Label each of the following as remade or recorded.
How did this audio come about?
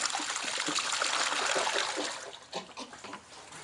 recorded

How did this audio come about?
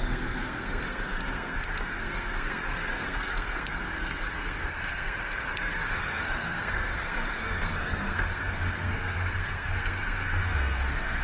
remade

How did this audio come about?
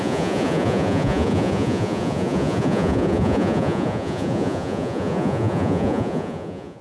remade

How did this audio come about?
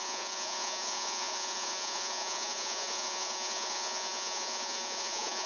remade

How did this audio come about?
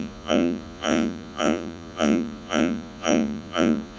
remade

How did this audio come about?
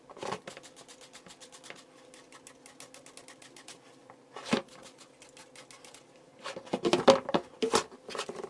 recorded